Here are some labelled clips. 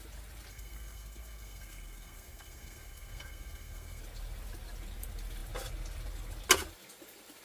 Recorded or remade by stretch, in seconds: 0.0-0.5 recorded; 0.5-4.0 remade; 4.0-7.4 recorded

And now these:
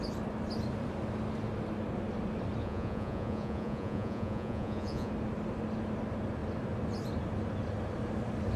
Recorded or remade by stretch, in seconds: 0.0-2.6 recorded; 2.6-5.1 remade; 5.1-8.6 recorded

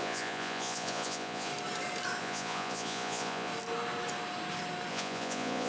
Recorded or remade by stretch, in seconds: 0.0-1.5 remade; 1.5-2.2 recorded; 2.2-3.5 remade; 3.5-4.9 recorded; 4.9-5.7 remade

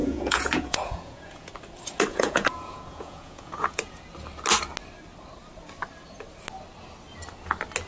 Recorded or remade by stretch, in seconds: 0.0-1.5 remade; 1.5-2.1 recorded; 2.1-4.0 remade; 4.0-7.9 recorded

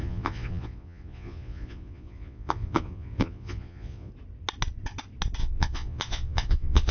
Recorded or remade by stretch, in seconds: 0.0-4.1 remade; 4.1-5.4 recorded; 5.4-6.9 remade

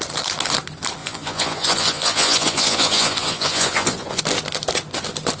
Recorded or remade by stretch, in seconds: 0.0-1.0 recorded; 1.0-4.2 remade; 4.2-5.4 recorded